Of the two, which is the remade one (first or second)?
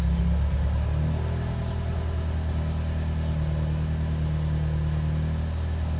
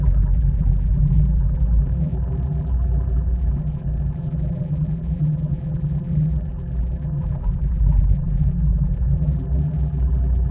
second